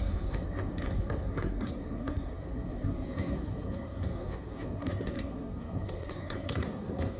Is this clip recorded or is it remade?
remade